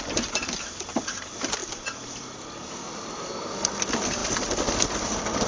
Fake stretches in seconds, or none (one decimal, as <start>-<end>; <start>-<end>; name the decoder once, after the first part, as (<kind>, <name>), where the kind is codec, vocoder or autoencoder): 1.6-3.4 (vocoder, BigVGAN v2)